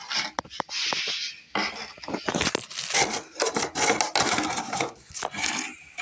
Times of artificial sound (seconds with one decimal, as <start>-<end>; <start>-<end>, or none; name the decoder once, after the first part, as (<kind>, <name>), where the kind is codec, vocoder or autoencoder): 4.6-5.1 (codec, SNAC)